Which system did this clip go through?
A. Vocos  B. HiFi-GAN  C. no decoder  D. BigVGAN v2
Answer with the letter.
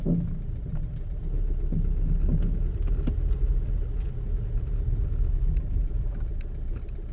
C